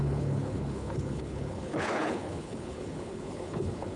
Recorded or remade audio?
remade